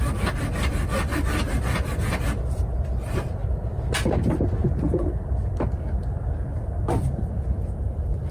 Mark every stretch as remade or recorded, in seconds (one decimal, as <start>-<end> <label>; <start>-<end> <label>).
0.0-8.3 recorded

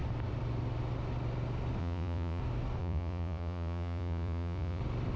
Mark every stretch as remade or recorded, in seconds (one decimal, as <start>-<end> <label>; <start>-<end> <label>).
0.0-1.8 recorded; 1.8-2.4 remade; 2.4-2.8 recorded; 2.8-4.8 remade; 4.8-5.2 recorded

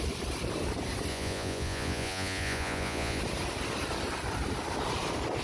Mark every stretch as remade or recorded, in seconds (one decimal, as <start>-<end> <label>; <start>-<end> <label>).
0.0-1.1 recorded; 1.1-3.2 remade; 3.2-5.4 recorded

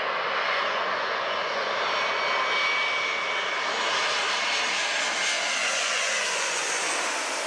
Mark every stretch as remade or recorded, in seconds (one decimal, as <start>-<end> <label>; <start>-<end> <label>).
0.0-0.4 recorded; 0.4-1.7 remade; 1.7-5.6 recorded; 5.6-6.9 remade; 6.9-7.5 recorded

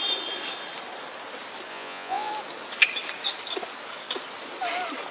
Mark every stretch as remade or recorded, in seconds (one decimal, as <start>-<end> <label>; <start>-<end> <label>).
0.0-1.7 recorded; 1.7-2.3 remade; 2.3-5.1 recorded